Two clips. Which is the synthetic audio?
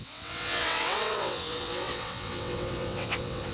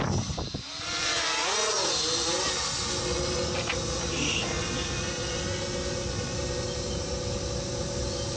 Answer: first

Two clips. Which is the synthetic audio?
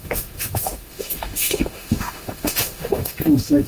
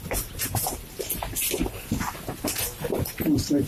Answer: first